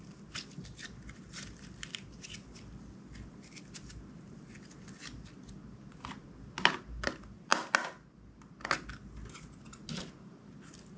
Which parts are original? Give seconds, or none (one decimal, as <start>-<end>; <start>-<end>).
0.0-11.0